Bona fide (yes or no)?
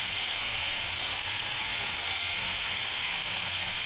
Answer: no